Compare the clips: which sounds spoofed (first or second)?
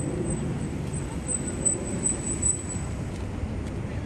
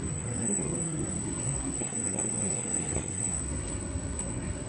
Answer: second